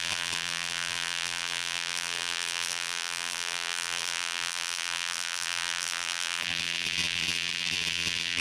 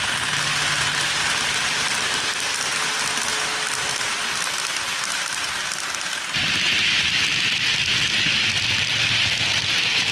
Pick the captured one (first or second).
second